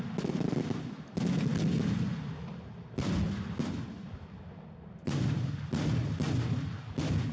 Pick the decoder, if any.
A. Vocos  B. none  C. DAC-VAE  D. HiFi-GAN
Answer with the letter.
B